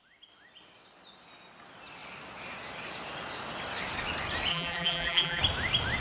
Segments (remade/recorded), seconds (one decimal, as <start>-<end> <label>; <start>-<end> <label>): 0.0-4.5 recorded; 4.5-5.4 remade; 5.4-6.0 recorded